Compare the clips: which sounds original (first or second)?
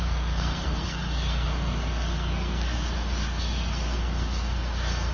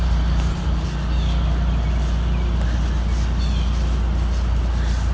second